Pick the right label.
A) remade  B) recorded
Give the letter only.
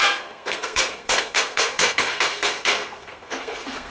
A